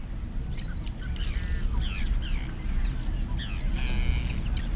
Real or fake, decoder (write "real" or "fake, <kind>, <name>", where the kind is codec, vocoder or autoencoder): real